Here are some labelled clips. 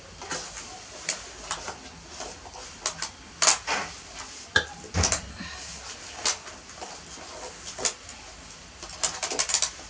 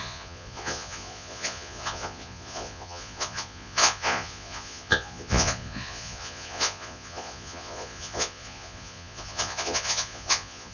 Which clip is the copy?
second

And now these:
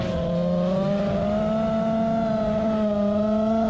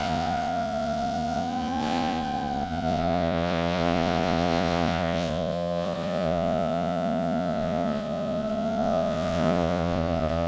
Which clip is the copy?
second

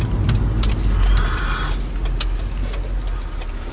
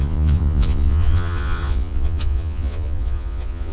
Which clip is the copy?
second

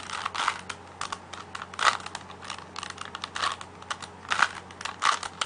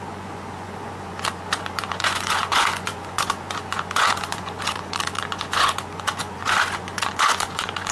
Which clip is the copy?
second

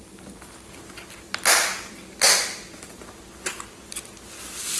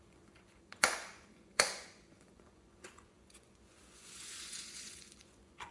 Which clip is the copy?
second